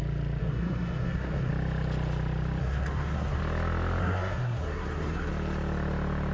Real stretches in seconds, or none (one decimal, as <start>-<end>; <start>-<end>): 0.0-0.4; 1.5-2.6; 3.4-4.0; 5.3-6.3

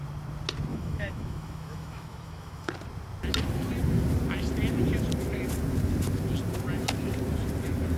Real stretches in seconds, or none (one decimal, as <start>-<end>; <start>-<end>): 0.0-0.7; 2.7-8.0

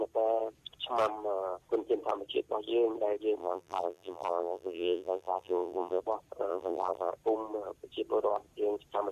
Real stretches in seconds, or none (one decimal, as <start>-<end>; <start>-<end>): 0.0-3.4; 6.0-6.5; 7.1-9.1

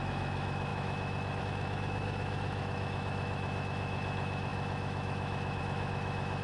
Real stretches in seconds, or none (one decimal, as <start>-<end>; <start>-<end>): none